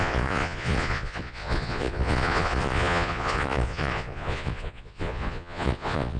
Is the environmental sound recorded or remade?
remade